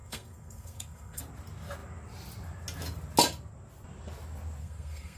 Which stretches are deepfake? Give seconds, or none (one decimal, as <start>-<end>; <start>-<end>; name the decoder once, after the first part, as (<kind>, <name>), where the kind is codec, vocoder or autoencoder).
0.0-1.2 (codec, SNAC); 4.6-5.2